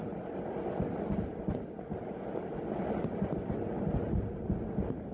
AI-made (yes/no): no